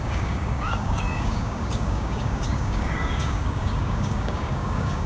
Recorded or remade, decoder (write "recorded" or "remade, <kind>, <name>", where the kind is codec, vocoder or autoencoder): remade, codec, DAC